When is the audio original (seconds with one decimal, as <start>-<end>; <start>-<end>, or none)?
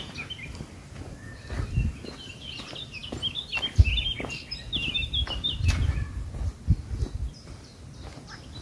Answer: 0.0-8.6